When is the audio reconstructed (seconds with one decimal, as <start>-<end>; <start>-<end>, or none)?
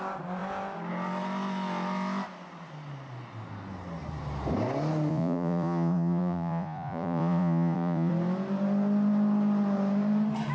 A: 5.1-8.1